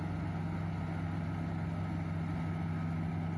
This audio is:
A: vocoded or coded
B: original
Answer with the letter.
B